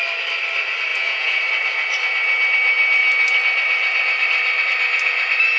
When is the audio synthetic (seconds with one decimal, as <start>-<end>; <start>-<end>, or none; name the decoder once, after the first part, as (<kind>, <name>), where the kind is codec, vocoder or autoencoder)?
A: 0.9-1.4 (vocoder, Vocos)